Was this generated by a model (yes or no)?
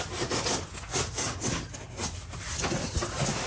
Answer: no